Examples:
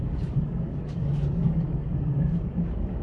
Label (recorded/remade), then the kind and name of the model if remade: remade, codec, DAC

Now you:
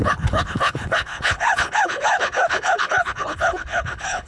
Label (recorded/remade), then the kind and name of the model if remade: remade, codec, HILCodec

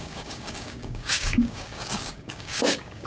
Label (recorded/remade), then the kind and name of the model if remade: remade, codec, DAC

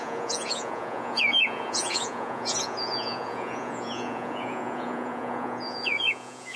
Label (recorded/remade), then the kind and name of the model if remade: remade, vocoder, Vocos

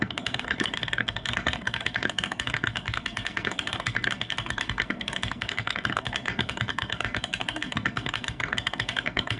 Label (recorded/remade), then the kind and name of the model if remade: remade, codec, SNAC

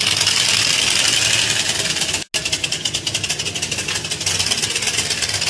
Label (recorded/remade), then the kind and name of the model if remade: recorded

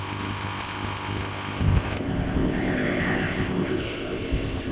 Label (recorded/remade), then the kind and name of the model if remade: remade, codec, ZipCodec